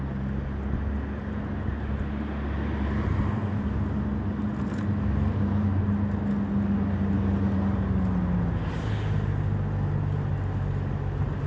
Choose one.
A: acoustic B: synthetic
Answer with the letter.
A